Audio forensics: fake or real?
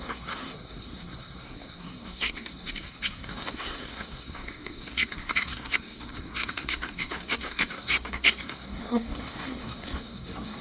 fake